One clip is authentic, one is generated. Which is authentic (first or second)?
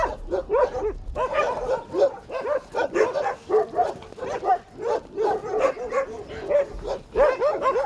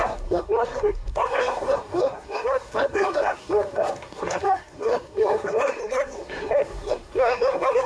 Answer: first